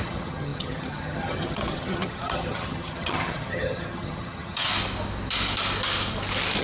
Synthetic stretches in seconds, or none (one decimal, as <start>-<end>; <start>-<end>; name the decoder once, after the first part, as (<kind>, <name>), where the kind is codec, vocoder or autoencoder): 0.0-4.7 (vocoder, HiFi-GAN)